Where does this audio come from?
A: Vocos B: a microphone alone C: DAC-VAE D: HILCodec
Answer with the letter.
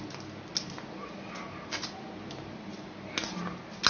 B